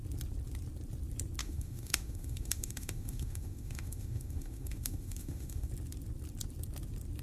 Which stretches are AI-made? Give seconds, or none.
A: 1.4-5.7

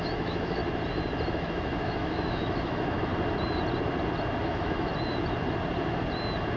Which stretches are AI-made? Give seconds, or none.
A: 0.0-0.6; 1.3-3.1; 4.4-4.9